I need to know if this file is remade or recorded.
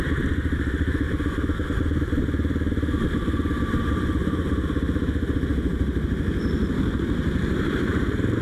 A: remade